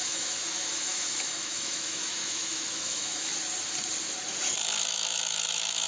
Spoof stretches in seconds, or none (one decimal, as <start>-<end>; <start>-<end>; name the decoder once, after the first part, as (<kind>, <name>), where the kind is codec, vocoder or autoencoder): 0.0-3.3 (autoencoder, DAC-VAE); 4.8-5.9